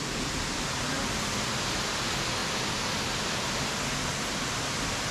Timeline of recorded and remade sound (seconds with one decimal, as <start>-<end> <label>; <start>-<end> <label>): 0.0-5.1 recorded